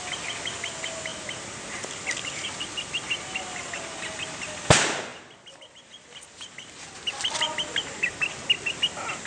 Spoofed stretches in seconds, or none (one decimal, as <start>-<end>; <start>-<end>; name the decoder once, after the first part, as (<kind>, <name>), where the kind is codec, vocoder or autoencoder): none